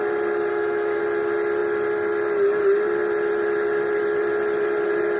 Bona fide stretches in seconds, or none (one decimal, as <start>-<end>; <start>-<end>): 0.0-0.5; 1.0-5.2